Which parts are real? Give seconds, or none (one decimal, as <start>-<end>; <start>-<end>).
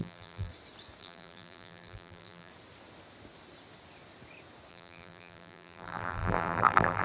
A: 0.5-1.0; 2.5-4.7